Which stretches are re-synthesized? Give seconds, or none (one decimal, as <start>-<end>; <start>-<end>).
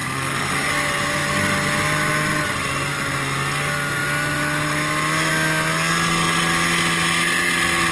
0.0-0.7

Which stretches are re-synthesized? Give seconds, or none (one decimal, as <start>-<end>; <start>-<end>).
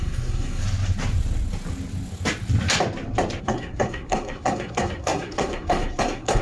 0.0-0.6; 3.4-6.4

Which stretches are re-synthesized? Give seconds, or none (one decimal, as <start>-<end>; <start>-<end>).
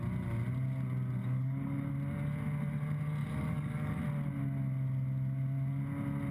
1.2-1.9; 3.2-4.0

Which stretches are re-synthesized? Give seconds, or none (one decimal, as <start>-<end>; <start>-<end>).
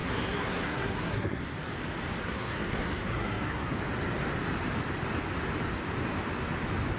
0.0-1.4; 2.2-3.8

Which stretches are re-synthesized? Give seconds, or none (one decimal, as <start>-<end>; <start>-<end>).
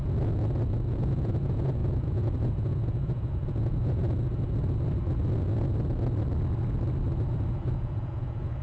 0.9-4.0; 7.7-8.6